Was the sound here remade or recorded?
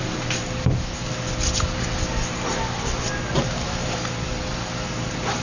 recorded